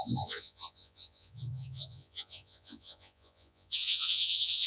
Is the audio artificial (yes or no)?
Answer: yes